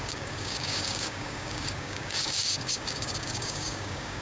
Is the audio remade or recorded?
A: remade